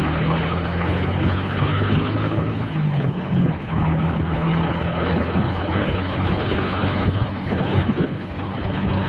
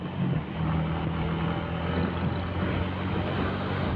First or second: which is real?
second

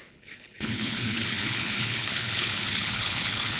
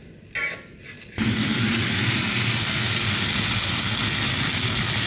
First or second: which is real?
second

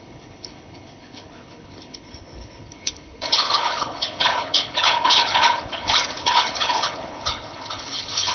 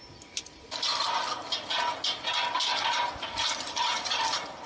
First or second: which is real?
second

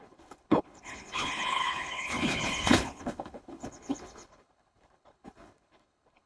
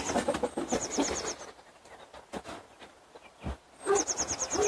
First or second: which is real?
second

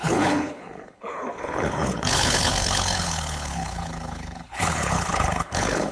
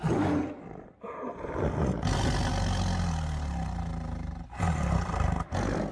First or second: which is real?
second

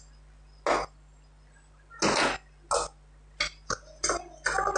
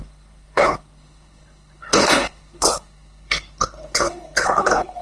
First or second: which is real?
first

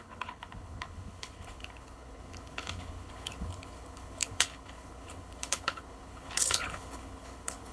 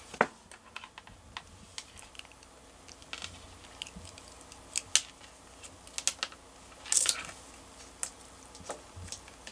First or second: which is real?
second